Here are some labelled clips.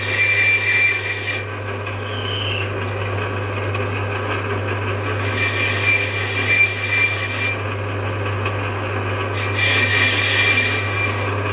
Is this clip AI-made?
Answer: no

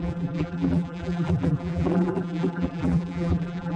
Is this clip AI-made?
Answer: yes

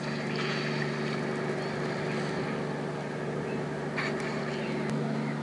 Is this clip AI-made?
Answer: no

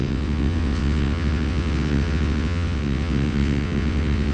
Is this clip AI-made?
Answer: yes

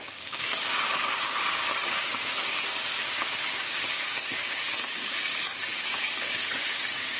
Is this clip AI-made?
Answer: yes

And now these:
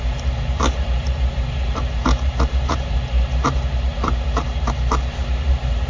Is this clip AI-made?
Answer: yes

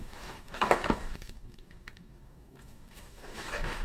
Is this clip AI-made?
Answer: yes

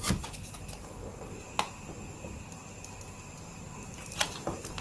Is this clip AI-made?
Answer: no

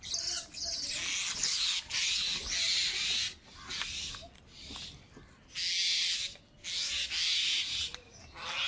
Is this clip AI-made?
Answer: no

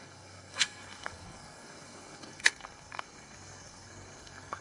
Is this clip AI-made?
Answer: yes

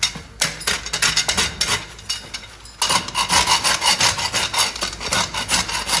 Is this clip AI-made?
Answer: no